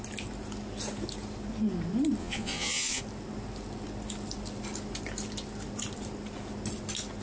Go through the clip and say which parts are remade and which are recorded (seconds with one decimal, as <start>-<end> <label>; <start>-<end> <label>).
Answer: 0.0-2.2 recorded; 2.2-3.0 remade; 3.0-7.2 recorded